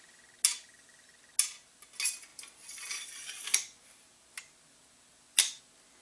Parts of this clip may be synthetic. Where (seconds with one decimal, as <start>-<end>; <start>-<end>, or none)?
none